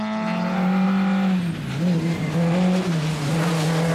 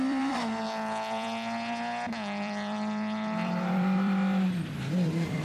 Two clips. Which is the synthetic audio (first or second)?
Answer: second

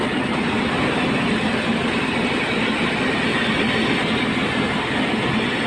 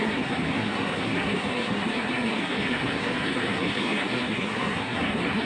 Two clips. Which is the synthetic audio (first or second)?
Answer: second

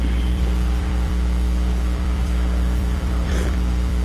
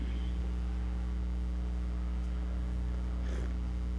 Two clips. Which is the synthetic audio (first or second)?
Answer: first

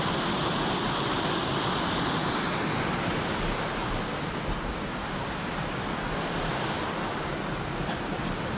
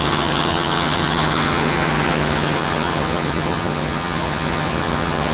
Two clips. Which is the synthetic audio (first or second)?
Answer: second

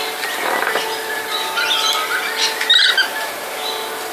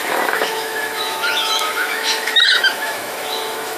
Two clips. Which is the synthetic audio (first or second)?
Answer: second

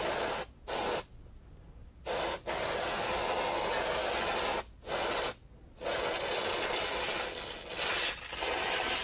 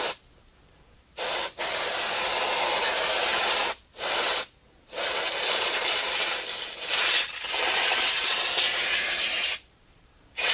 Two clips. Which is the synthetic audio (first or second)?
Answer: second